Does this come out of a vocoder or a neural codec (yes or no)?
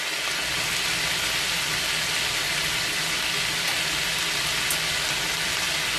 no